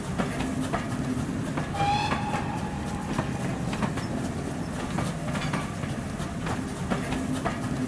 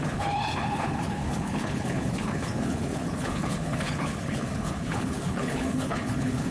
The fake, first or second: second